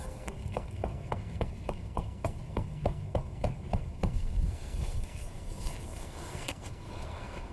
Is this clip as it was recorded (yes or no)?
no